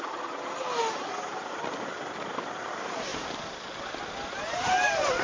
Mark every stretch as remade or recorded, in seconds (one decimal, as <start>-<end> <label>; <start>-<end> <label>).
0.0-5.2 recorded